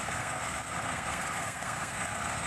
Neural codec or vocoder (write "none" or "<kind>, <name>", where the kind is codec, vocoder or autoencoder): codec, SNAC